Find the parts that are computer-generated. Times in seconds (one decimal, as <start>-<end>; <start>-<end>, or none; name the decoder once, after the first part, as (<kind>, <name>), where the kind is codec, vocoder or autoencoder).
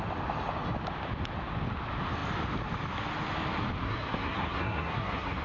3.8-5.4 (codec, SNAC)